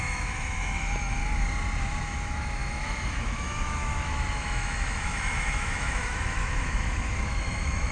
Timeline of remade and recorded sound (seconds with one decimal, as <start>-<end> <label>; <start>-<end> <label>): 0.0-1.2 remade; 1.2-1.8 recorded; 1.8-7.9 remade